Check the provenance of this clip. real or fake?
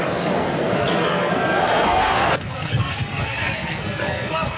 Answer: fake